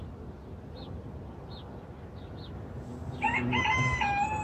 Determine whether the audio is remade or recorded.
recorded